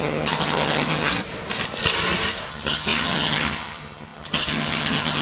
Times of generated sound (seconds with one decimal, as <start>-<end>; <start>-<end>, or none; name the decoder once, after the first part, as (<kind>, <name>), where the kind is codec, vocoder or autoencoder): 0.0-1.1 (vocoder, HiFi-GAN); 2.5-5.2